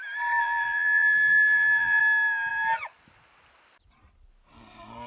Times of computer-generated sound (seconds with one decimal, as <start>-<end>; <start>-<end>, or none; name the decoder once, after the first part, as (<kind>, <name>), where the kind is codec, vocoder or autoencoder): 0.4-2.0 (vocoder, BigVGAN v2)